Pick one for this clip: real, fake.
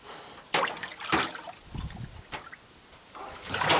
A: real